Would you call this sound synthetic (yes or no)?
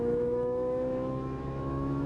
yes